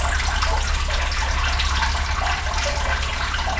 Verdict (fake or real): real